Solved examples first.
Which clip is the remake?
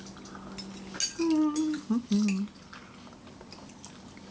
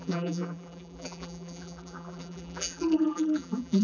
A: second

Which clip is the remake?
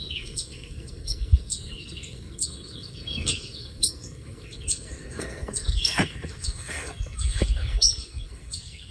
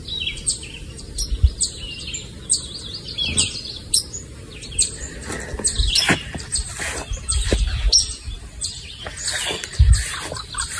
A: first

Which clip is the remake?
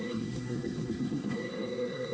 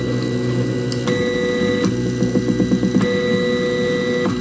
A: first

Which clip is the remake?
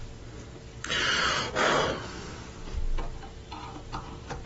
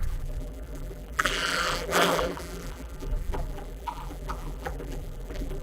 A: second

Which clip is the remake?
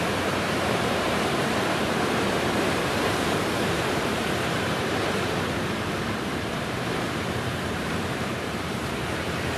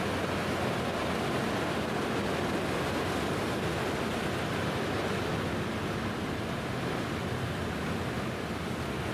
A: first